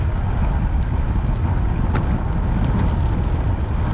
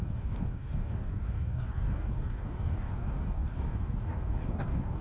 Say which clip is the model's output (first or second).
second